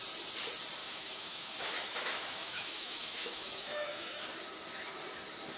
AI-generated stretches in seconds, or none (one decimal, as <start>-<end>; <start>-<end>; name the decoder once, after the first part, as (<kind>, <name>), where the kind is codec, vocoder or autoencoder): 0.8-4.2 (autoencoder, DAC-VAE)